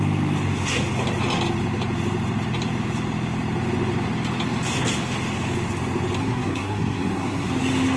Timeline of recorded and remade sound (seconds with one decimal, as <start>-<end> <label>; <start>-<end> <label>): 0.0-6.2 recorded; 6.2-7.5 remade; 7.5-8.0 recorded